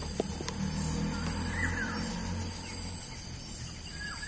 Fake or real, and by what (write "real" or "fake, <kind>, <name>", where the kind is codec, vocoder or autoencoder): real